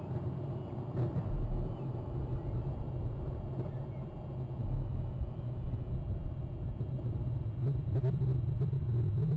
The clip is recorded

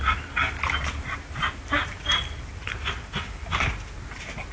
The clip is recorded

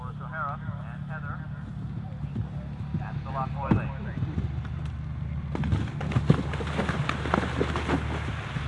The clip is recorded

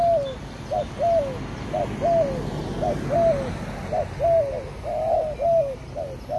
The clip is recorded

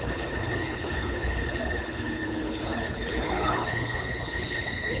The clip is remade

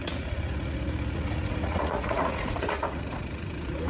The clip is remade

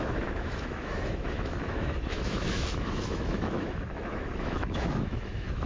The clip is remade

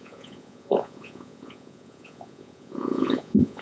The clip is remade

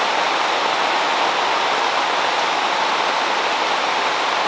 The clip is recorded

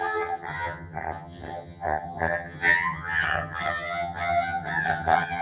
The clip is remade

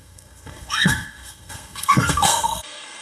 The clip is remade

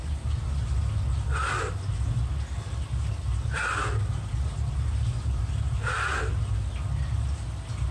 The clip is recorded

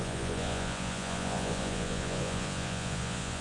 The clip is remade